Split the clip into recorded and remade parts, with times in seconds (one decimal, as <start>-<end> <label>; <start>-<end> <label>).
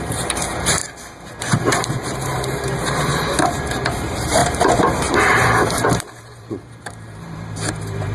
0.0-0.8 remade; 0.8-1.4 recorded; 1.4-8.1 remade